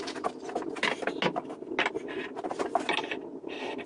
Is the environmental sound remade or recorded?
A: recorded